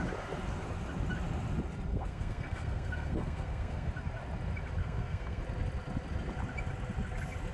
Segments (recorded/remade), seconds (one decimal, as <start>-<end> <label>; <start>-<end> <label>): 0.0-1.9 recorded; 1.9-3.9 remade; 3.9-4.8 recorded; 4.8-5.4 remade; 5.4-7.5 recorded